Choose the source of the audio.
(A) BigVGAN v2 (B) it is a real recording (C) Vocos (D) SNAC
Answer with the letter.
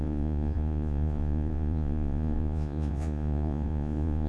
C